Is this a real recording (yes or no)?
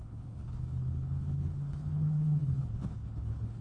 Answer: no